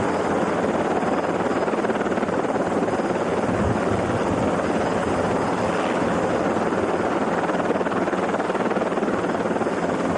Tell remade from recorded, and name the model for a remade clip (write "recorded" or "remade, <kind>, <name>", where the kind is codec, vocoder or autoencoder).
recorded